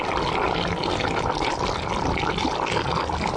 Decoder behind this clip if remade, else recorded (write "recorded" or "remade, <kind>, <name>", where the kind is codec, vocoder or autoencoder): recorded